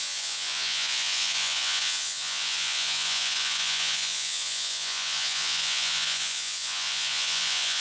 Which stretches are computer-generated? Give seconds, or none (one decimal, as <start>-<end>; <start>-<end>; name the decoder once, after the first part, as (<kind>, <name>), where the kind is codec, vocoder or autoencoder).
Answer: 0.0-7.8 (vocoder, Vocos)